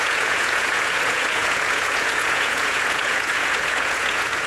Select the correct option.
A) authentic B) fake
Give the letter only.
B